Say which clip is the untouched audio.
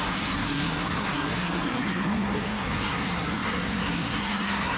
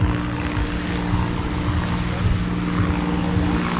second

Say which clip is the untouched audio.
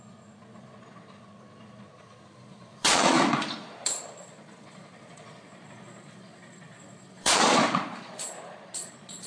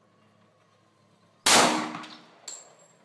second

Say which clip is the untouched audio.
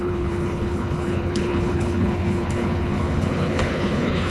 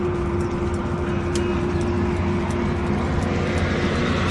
second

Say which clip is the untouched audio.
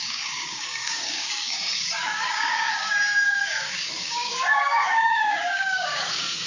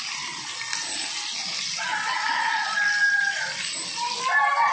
second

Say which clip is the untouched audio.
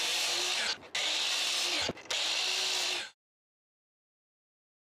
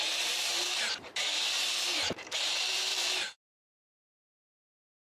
first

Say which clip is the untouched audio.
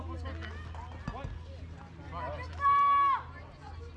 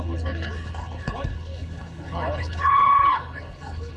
first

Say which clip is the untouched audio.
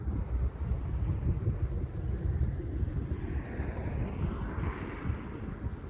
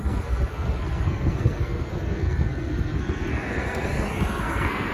first